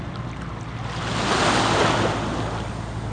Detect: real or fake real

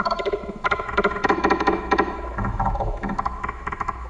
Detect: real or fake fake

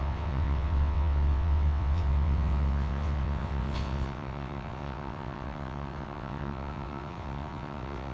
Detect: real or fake fake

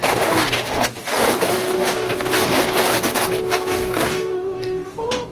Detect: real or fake fake